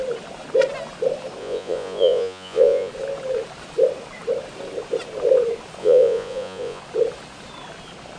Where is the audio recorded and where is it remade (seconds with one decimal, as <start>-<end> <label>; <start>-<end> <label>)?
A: 0.0-1.4 recorded; 1.4-2.9 remade; 2.9-5.8 recorded; 5.8-6.8 remade; 6.8-8.2 recorded